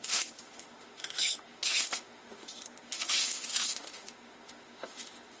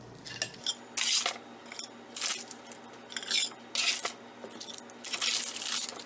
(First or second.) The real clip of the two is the second